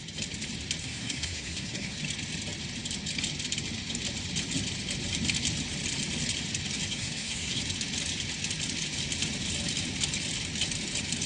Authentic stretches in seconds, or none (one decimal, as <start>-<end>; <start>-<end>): 0.0-0.8; 2.0-6.9; 7.6-11.3